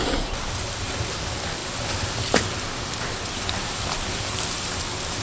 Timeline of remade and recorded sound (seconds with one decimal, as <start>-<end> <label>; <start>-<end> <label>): 0.0-5.2 recorded